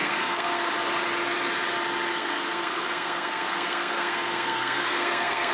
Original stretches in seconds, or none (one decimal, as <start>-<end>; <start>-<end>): 0.7-2.1